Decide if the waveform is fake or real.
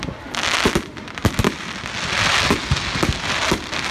real